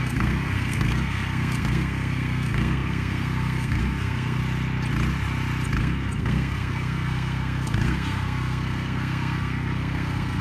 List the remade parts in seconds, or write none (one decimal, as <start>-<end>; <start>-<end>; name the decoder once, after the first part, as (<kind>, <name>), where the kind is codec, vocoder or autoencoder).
0.0-4.4 (codec, SNAC); 5.8-10.4